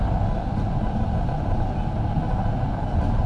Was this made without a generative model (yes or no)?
yes